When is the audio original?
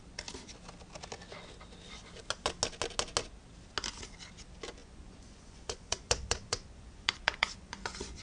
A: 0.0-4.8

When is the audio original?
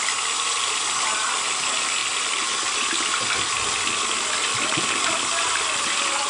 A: 0.0-6.3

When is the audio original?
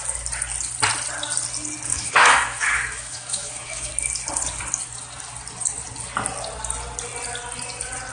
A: 0.0-1.9; 3.9-8.1